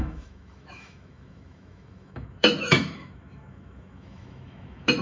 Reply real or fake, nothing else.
fake